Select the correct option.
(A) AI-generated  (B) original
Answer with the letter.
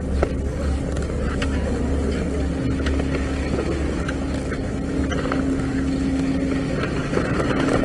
B